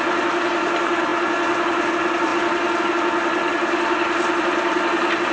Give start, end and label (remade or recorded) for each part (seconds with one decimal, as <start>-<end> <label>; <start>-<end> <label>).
0.0-5.3 recorded